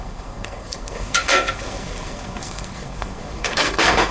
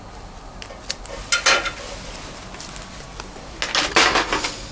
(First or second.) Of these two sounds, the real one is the second